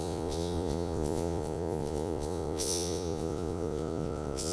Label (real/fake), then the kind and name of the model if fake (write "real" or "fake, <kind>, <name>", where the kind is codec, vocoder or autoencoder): fake, vocoder, Vocos